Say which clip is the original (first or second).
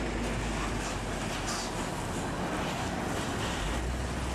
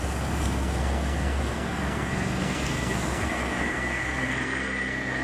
first